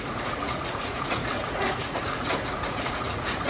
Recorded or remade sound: remade